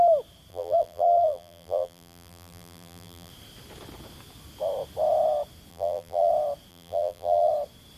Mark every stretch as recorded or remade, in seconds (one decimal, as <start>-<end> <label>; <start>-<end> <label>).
0.0-0.5 recorded; 0.5-3.3 remade; 3.3-5.7 recorded; 5.7-6.3 remade; 6.3-6.7 recorded; 6.7-7.5 remade; 7.5-8.0 recorded